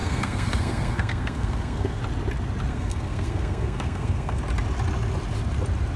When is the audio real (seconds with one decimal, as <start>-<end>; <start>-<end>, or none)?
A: 2.0-2.7; 4.4-6.0